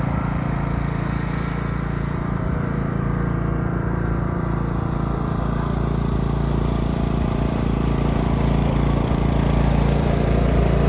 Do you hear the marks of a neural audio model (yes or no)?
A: yes